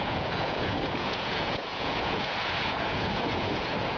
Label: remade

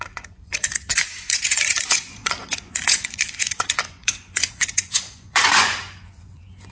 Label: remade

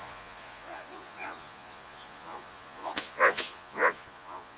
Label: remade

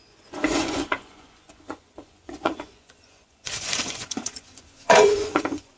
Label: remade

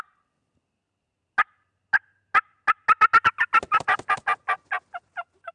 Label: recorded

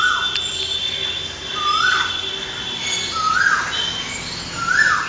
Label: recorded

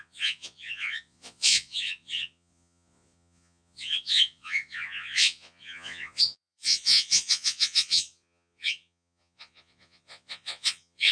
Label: remade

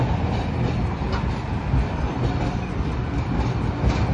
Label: recorded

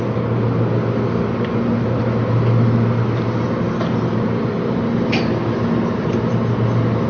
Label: recorded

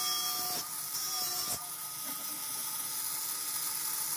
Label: recorded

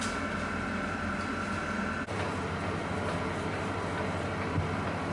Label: recorded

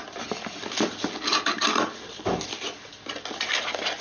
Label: recorded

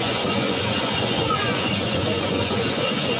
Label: remade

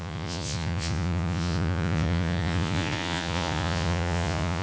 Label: remade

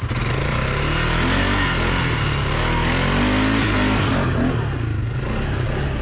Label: recorded